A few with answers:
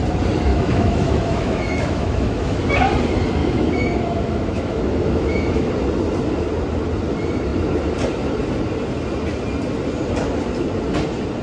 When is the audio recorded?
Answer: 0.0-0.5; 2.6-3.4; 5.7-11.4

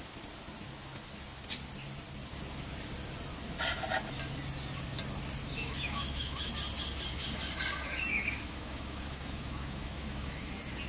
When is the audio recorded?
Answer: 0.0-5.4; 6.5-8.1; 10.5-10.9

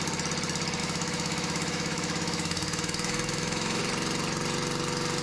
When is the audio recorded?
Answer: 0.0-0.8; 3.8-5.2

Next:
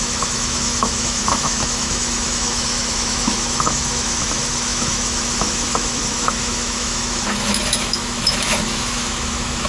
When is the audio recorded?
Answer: none

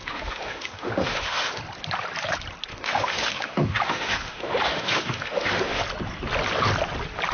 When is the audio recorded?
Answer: 1.6-2.7; 5.8-7.3